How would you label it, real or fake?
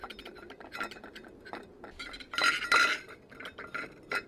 real